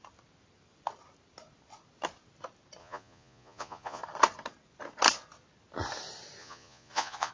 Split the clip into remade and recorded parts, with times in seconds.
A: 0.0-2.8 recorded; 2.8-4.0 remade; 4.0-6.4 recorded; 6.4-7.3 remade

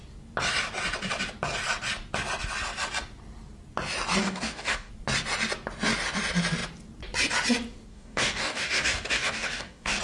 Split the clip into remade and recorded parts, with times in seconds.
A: 0.0-4.2 recorded; 4.2-4.9 remade; 4.9-7.9 recorded; 7.9-10.0 remade

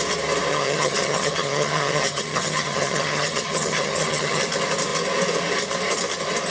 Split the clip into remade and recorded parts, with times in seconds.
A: 0.0-0.5 recorded; 0.5-4.4 remade; 4.4-6.5 recorded

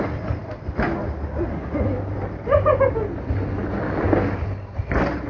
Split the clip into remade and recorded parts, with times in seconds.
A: 0.0-5.3 recorded